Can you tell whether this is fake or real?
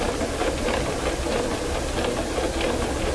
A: real